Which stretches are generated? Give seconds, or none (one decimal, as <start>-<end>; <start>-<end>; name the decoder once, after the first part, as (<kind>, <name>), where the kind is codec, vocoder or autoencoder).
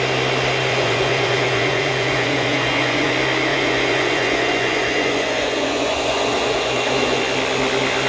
0.7-3.1 (vocoder, Vocos); 3.5-7.2